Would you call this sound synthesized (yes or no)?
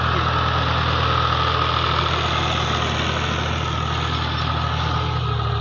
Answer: no